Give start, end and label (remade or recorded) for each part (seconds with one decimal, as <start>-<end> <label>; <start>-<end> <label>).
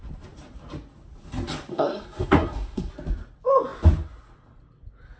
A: 0.0-1.7 recorded; 1.7-2.9 remade; 2.9-5.2 recorded